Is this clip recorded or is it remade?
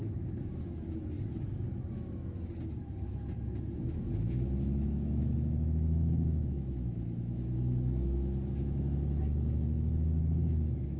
remade